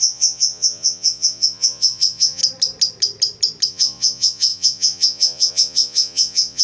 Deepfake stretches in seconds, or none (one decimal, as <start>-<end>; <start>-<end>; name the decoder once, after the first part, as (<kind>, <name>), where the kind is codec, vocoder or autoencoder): 0.0-2.4 (vocoder, Vocos); 3.7-6.6